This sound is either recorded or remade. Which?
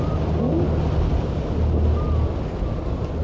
recorded